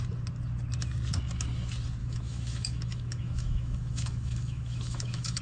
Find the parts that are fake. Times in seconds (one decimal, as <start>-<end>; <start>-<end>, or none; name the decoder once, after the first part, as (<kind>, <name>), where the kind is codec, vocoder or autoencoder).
2.0-5.4 (autoencoder, DAC-VAE)